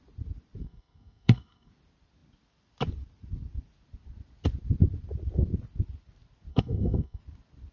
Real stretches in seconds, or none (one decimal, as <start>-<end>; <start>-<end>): 0.0-0.6; 1.7-6.5; 7.2-7.7